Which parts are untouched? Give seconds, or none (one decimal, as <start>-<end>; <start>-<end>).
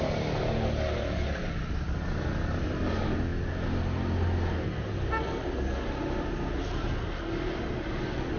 0.0-8.4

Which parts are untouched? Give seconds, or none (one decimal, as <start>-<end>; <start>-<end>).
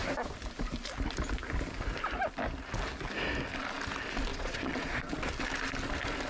0.0-4.3; 5.1-6.3